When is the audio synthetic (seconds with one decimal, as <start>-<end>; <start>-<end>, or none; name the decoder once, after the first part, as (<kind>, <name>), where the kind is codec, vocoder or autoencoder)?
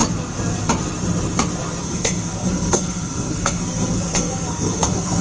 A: 1.8-5.2 (codec, SNAC)